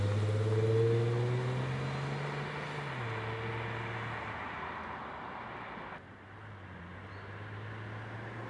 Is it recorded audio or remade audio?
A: recorded